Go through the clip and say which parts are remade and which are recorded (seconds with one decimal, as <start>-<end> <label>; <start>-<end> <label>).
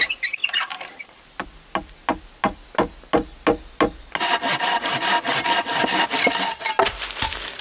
0.0-0.4 recorded; 0.4-1.2 remade; 1.2-7.6 recorded